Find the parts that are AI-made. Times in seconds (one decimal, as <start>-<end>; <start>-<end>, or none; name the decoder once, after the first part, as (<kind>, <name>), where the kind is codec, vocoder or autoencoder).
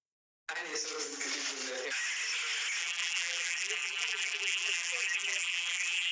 2.8-6.1 (vocoder, BigVGAN v2)